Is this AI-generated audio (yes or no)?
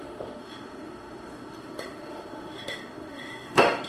yes